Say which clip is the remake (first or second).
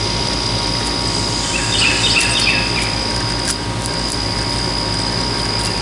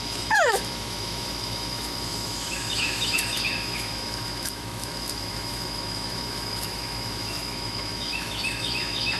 second